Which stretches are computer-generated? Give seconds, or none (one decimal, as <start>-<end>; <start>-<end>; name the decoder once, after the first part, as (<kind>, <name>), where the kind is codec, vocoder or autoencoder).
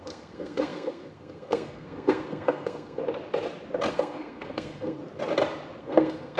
0.0-3.0 (codec, SNAC); 3.9-5.0; 5.8-6.4